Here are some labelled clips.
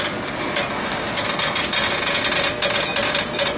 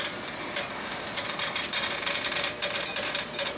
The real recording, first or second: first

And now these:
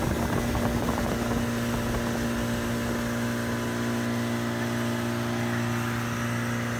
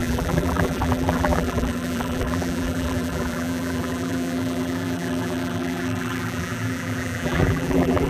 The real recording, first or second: first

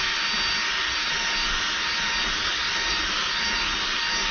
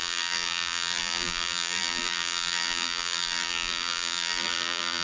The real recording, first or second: first